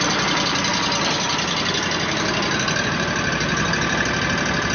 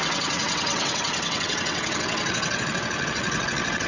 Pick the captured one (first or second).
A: first